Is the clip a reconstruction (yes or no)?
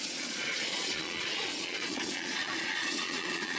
yes